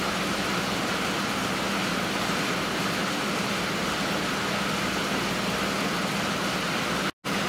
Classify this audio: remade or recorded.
recorded